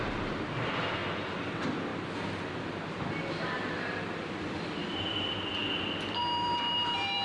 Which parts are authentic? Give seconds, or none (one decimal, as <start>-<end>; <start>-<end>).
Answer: 1.9-3.4